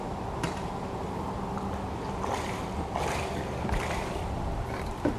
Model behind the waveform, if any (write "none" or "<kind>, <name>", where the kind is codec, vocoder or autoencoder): none